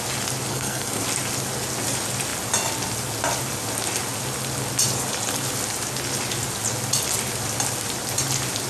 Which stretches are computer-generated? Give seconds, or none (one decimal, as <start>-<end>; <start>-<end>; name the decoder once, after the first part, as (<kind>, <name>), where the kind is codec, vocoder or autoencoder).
0.5-1.0 (codec, SNAC)